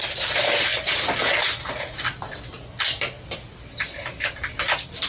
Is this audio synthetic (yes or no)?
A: no